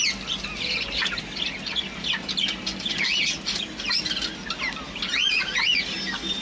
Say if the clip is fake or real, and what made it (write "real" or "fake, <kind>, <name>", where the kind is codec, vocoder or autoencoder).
real